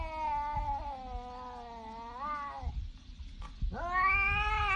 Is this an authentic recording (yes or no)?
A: yes